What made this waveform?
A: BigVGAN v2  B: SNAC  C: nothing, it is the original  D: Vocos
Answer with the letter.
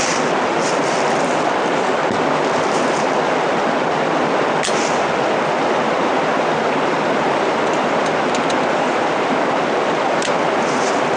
C